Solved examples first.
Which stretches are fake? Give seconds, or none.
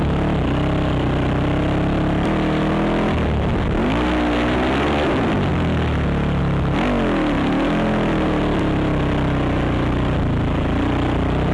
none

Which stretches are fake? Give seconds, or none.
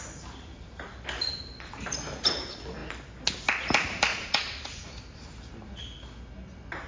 4.1-5.0 (vocoder, Vocos)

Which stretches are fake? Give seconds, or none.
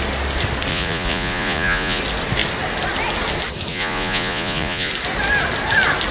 0.7-2.0 (vocoder, Vocos); 3.7-4.9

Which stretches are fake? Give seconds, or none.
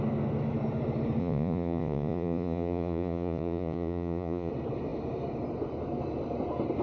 1.2-4.5 (vocoder, Vocos)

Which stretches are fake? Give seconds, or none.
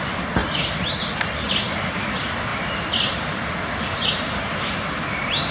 none